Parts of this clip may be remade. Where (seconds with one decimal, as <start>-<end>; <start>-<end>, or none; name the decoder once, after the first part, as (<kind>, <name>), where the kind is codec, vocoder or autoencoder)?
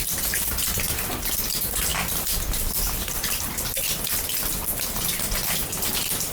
none